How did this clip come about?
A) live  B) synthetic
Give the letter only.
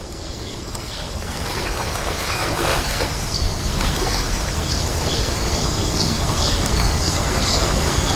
B